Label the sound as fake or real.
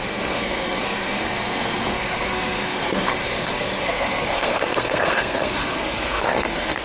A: fake